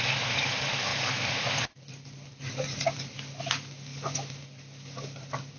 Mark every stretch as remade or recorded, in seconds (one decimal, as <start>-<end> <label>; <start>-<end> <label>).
0.0-5.6 recorded